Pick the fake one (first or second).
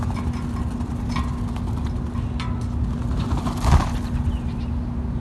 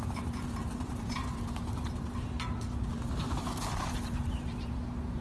second